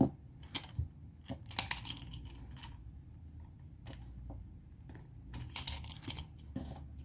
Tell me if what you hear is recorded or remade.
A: recorded